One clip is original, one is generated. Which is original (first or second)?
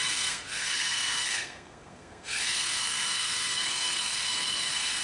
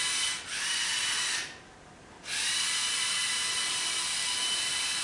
second